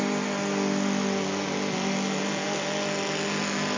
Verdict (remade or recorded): recorded